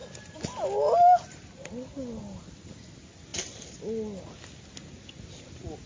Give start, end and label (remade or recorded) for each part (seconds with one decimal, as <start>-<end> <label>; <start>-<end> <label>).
0.0-5.9 recorded